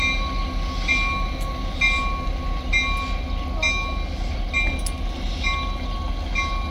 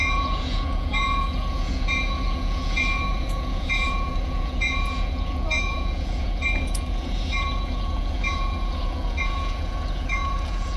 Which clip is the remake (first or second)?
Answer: second